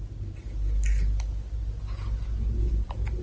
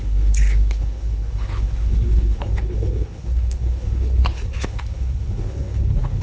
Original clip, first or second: first